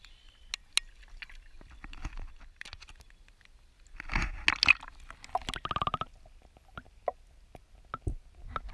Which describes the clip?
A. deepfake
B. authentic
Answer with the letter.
B